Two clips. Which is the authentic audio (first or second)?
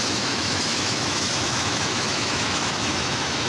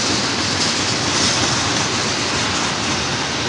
second